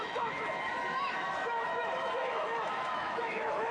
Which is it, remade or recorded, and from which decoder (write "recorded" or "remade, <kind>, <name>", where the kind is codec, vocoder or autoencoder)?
remade, autoencoder, DAC-VAE